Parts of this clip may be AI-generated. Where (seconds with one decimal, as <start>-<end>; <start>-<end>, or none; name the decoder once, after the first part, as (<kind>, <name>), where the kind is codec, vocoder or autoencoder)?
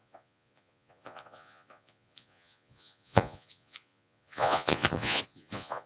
0.0-5.9 (vocoder, Vocos)